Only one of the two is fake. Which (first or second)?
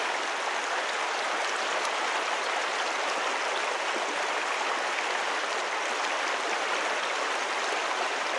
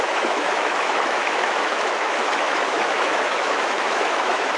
second